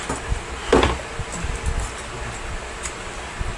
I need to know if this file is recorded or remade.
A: recorded